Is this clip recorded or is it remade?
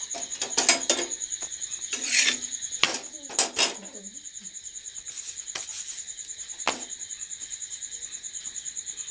recorded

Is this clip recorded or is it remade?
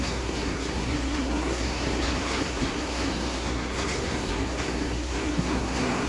remade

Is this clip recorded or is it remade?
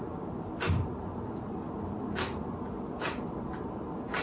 recorded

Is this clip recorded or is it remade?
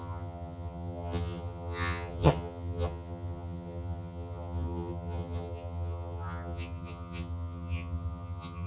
remade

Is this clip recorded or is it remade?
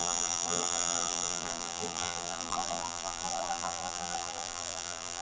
remade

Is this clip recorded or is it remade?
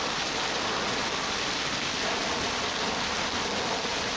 recorded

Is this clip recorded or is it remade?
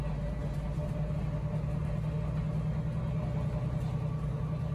recorded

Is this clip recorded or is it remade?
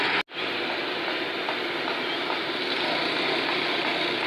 recorded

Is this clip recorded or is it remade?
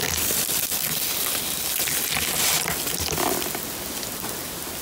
recorded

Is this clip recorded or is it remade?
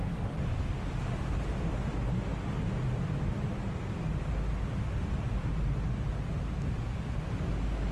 recorded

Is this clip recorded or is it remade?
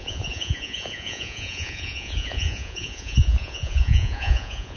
remade